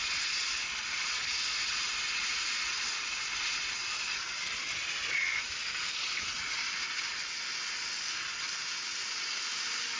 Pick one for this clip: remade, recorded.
recorded